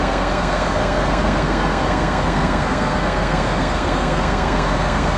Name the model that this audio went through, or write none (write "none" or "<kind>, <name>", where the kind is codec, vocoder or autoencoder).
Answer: codec, SNAC